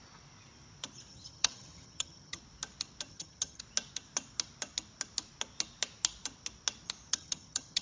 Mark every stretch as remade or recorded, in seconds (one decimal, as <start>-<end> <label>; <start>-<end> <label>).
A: 0.0-1.1 recorded; 1.1-2.4 remade; 2.4-3.1 recorded; 3.1-3.6 remade; 3.6-7.1 recorded; 7.1-7.8 remade